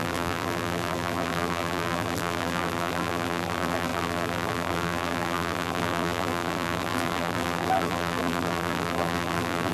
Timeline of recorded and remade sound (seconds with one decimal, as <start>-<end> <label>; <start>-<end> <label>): 0.0-9.7 remade